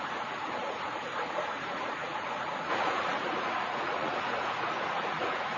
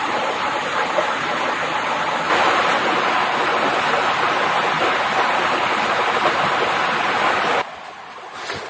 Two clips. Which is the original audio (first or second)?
second